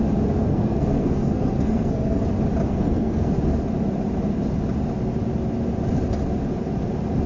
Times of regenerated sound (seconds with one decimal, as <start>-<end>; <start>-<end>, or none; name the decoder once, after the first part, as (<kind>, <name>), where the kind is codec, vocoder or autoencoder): 0.4-2.2 (codec, SNAC); 2.7-3.3